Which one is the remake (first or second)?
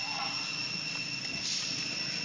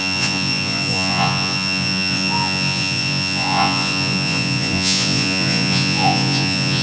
second